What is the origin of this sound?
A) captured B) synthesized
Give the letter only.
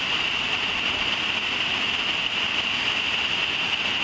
A